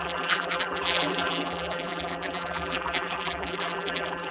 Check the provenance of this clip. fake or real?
fake